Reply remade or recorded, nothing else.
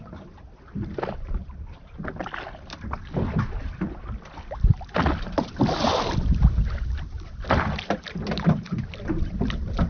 recorded